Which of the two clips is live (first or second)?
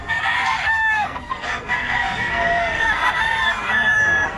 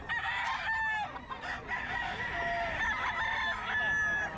second